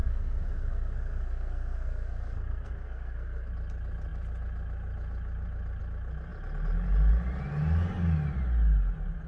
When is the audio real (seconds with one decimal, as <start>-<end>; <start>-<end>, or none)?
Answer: 3.5-9.3